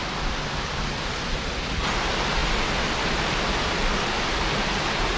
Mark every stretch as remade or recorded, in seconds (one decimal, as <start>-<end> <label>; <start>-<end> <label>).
0.0-5.2 recorded